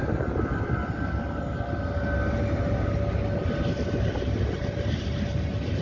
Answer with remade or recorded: recorded